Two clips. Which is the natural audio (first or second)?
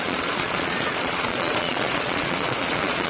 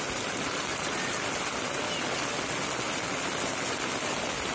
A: second